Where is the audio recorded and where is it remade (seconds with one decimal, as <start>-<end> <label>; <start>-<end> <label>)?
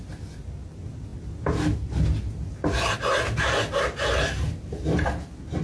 0.0-5.6 recorded